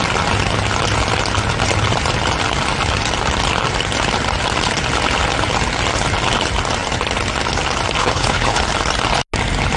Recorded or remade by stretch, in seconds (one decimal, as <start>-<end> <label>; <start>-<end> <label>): 0.0-8.0 recorded; 8.0-8.6 remade; 8.6-9.8 recorded